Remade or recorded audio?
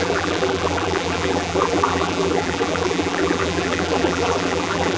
remade